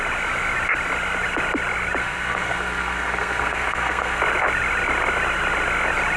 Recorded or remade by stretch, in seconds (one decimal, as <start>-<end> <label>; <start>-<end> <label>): 0.0-2.0 recorded; 2.0-4.2 remade; 4.2-6.2 recorded